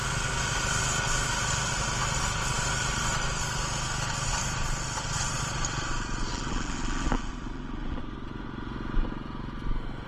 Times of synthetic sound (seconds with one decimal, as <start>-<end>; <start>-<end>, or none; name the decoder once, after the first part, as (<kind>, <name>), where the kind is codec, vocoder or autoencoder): 6.3-8.0 (vocoder, BigVGAN v2)